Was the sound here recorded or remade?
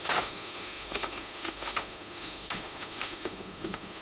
remade